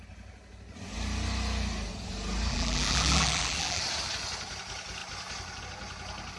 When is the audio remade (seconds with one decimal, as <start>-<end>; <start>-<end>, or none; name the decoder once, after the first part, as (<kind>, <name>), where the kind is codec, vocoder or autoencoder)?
2.5-3.8 (vocoder, BigVGAN v2)